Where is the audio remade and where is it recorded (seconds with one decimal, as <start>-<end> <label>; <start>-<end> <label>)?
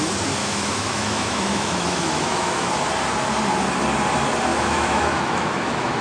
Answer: 0.0-0.4 recorded; 0.4-2.7 remade; 2.7-4.5 recorded; 4.5-6.0 remade